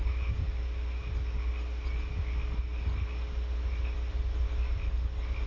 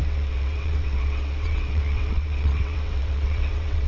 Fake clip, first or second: second